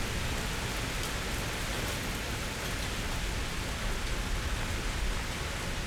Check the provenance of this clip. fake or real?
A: real